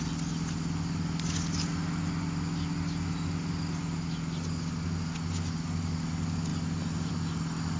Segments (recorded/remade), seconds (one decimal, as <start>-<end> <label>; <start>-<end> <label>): 0.0-7.8 recorded